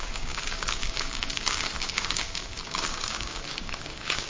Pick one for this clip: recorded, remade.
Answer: remade